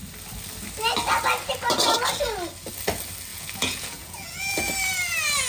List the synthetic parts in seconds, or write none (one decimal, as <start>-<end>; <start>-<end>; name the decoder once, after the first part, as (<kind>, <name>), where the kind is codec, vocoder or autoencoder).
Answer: 3.3-4.7 (vocoder, Vocos)